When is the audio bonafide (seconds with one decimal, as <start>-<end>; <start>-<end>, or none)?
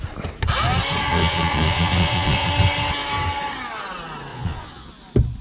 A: 0.0-1.1; 2.5-4.3; 4.9-5.4